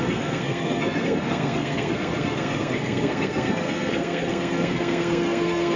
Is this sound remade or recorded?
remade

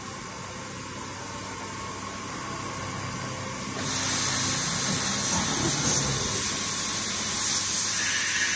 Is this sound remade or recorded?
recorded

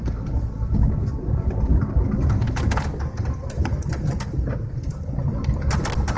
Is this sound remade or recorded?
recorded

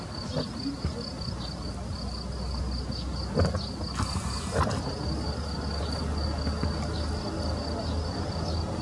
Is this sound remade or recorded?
recorded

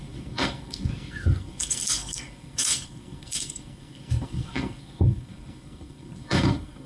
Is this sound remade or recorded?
remade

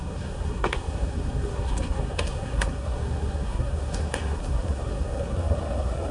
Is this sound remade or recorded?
remade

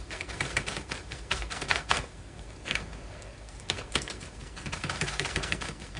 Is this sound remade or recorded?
remade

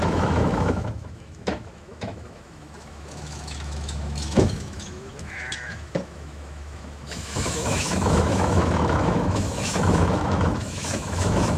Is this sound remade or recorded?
remade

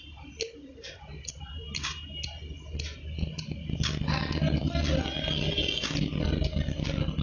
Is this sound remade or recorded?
recorded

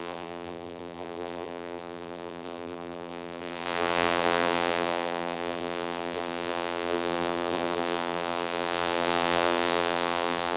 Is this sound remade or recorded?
remade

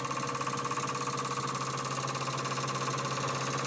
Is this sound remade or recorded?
recorded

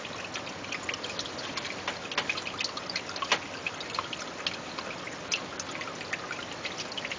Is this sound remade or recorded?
recorded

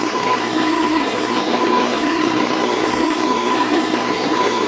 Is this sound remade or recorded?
remade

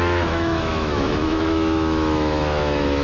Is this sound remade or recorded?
remade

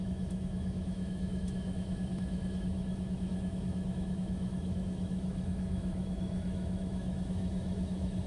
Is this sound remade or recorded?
remade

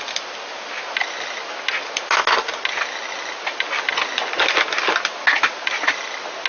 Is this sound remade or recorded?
recorded